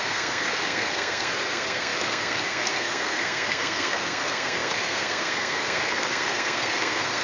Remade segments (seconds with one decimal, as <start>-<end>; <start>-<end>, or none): 0.0-7.2